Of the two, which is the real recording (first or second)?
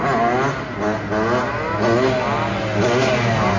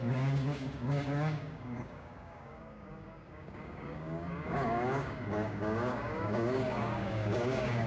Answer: first